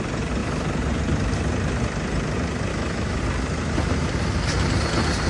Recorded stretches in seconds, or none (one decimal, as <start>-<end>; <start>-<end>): 0.0-2.7; 3.2-5.3